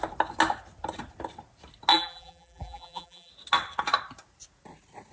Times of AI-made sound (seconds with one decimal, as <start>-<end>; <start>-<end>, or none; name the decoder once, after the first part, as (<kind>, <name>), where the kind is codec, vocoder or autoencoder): 1.9-3.3 (vocoder, BigVGAN v2)